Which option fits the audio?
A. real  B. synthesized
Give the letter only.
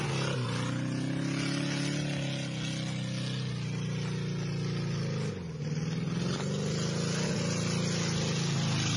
A